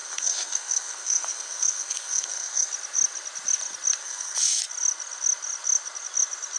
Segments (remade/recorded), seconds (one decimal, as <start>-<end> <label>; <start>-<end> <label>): 0.0-2.7 remade; 2.7-4.0 recorded; 4.0-4.6 remade; 4.6-6.6 recorded

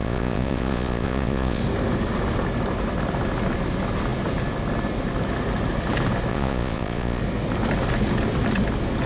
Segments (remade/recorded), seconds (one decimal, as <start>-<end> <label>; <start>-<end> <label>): 0.0-1.6 remade; 1.6-6.3 recorded; 6.3-7.2 remade; 7.2-9.1 recorded

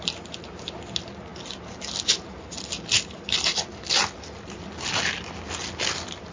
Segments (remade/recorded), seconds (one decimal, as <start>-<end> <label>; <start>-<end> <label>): 0.0-6.3 recorded

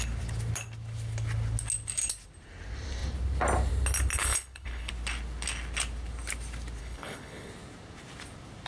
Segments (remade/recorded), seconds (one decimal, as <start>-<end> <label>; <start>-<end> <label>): 0.0-4.2 recorded; 4.2-4.9 remade; 4.9-6.8 recorded; 6.8-7.5 remade; 7.5-8.7 recorded

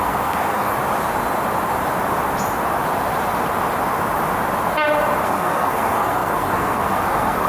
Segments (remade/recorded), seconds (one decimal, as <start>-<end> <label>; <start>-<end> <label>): 0.0-0.7 remade; 0.7-5.2 recorded; 5.2-7.5 remade